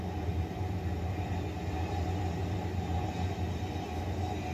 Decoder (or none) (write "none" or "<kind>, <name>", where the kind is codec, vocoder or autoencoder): none